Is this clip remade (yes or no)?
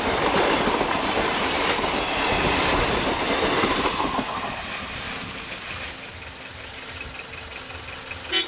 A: no